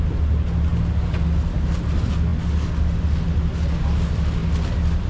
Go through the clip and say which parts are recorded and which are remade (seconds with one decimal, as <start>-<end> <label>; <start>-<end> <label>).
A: 0.0-5.1 recorded